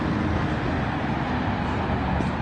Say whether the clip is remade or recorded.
recorded